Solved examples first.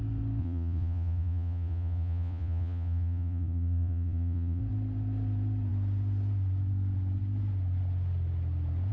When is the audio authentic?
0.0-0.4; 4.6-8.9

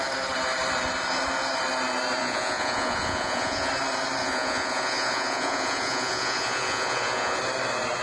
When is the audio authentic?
0.0-2.2; 3.7-4.2; 7.4-8.0

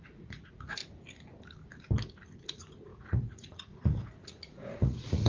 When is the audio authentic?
0.8-2.5

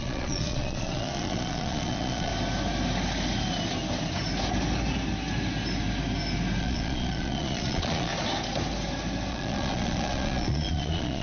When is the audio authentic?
2.3-6.6; 8.1-9.3

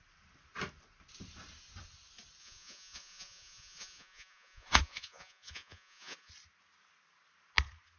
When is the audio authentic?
0.0-2.4; 6.3-8.0

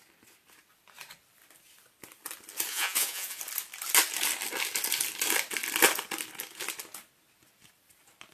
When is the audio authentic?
0.0-2.7; 3.4-8.3

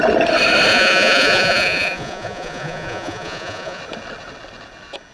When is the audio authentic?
0.0-0.7; 3.8-5.1